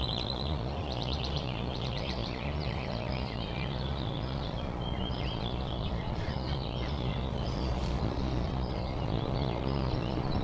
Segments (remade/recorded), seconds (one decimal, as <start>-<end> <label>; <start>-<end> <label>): 0.0-10.4 remade